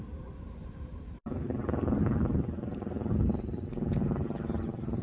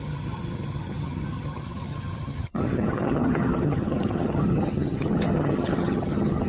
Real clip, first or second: first